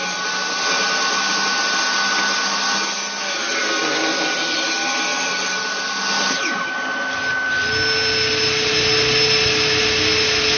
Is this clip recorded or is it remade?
recorded